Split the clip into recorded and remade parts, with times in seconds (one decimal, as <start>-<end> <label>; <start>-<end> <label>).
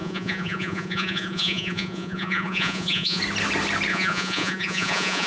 0.0-3.2 remade; 3.2-3.9 recorded; 3.9-5.3 remade